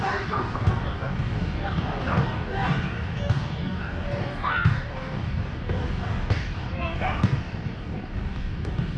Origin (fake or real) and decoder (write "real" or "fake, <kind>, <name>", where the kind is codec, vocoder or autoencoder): fake, codec, DAC